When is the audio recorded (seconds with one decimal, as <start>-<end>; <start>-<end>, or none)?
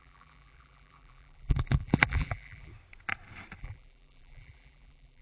2.7-3.6